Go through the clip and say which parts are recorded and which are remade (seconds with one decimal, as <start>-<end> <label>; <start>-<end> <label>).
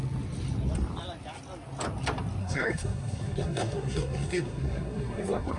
0.0-2.4 recorded; 2.4-5.6 remade